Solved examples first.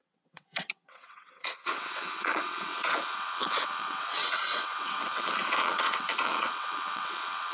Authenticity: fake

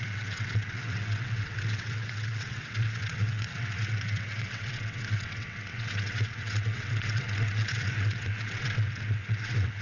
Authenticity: fake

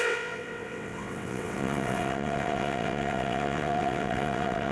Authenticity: fake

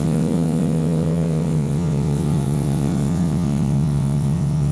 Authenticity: fake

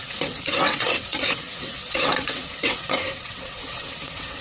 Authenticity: fake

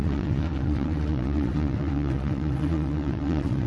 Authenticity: fake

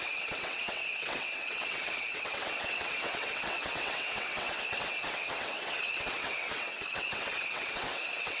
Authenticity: fake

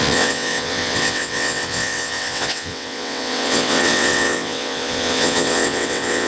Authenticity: fake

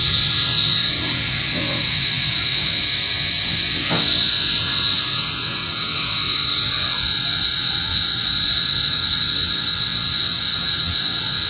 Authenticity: fake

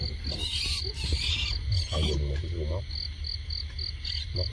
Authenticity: real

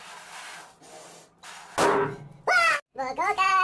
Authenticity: real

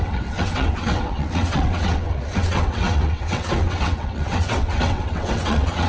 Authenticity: fake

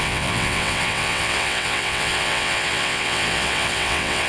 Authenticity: fake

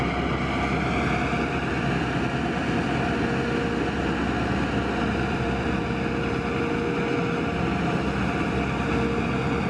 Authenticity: real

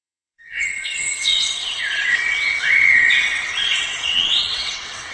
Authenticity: fake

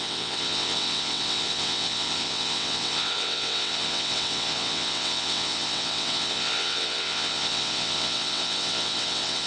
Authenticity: fake